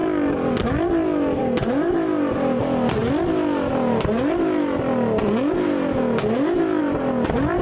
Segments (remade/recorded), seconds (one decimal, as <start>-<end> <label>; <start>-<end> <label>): 0.0-7.6 recorded